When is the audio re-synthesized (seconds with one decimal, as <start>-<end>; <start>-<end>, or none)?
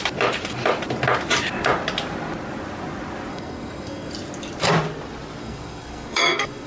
3.3-4.1; 5.4-6.7